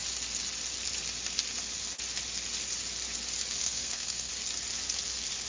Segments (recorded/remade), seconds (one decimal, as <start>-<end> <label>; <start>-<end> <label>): 0.0-3.6 recorded; 3.6-4.3 remade; 4.3-5.5 recorded